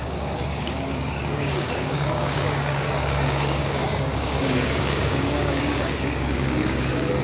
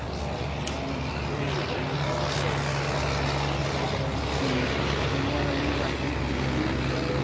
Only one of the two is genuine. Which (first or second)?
second